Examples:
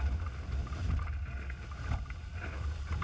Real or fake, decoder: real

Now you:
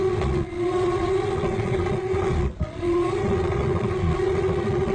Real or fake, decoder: fake, vocoder, Vocos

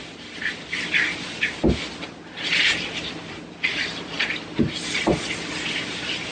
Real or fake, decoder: real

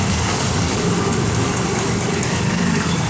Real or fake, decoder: fake, codec, DAC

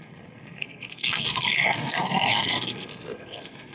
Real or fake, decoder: fake, codec, SNAC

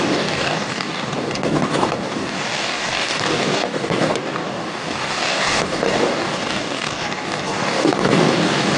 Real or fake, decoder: fake, codec, DAC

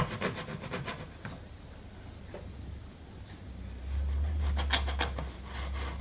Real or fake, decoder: real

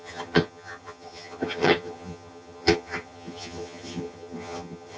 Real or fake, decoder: fake, vocoder, HiFi-GAN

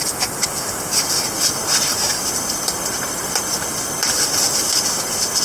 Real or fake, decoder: real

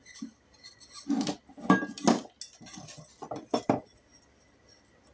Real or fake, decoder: real